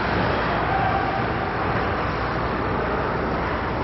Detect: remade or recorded recorded